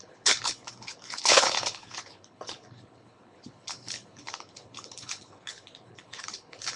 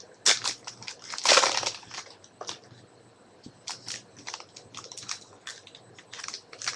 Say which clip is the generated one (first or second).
first